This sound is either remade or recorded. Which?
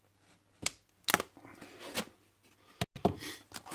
recorded